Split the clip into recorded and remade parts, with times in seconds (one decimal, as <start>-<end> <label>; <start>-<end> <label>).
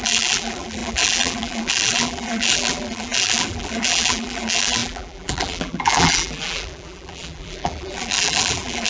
0.0-8.9 remade